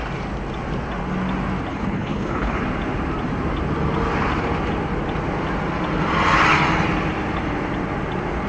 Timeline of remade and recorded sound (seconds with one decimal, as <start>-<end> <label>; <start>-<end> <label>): 0.0-1.7 recorded; 1.7-2.6 remade; 2.6-8.5 recorded